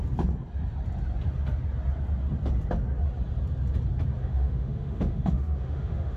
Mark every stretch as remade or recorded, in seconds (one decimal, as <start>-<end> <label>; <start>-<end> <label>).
0.0-4.2 recorded; 4.2-6.2 remade